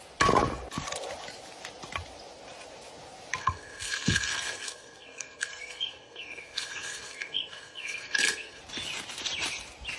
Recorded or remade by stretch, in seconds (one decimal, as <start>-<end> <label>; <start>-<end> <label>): 0.0-3.4 recorded; 3.4-8.6 remade; 8.6-10.0 recorded